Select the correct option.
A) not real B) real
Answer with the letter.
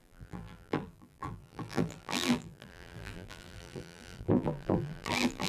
A